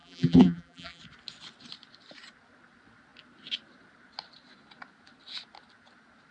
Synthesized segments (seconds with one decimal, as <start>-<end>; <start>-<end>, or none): 0.0-1.0